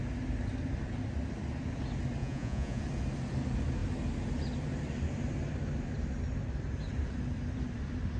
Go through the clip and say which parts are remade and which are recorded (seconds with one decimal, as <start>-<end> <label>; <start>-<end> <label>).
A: 0.0-2.2 recorded; 2.2-2.8 remade; 2.8-8.2 recorded